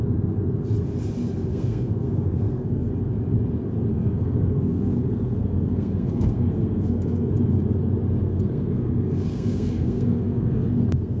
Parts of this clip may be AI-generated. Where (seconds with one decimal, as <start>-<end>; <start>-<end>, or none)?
1.5-2.9; 3.9-7.3; 8.2-11.2